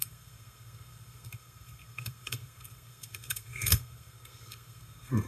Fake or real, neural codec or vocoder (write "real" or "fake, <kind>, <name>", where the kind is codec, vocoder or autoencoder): fake, codec, SNAC